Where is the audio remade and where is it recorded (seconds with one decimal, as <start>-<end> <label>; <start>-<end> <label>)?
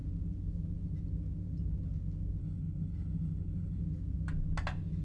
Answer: 0.0-2.4 recorded; 2.4-3.8 remade; 3.8-5.0 recorded